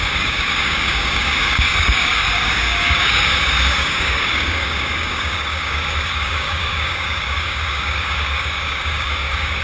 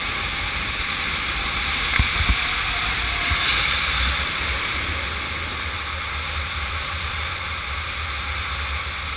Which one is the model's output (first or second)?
first